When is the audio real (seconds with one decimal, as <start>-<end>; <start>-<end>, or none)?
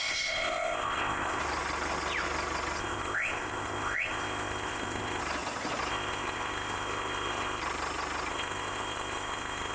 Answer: 1.4-2.8; 5.2-5.9; 7.6-8.3